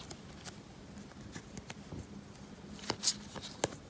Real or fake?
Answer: real